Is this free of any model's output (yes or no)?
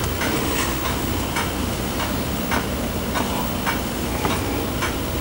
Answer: yes